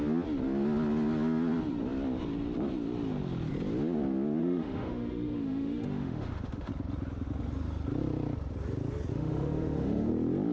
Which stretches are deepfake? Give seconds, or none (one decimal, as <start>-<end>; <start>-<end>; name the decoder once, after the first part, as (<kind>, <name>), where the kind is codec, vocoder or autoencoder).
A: 4.4-6.7 (autoencoder, DAC-VAE); 9.1-10.1